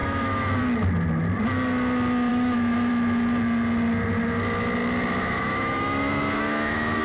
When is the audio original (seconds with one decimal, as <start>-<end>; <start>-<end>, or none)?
0.6-2.3; 2.9-4.8